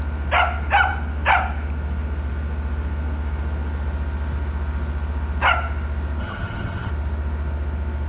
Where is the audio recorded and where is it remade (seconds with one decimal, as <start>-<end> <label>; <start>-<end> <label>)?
0.0-6.2 recorded; 6.2-6.9 remade; 6.9-8.1 recorded